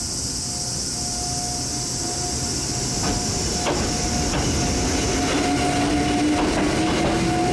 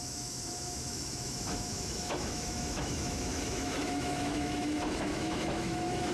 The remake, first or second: second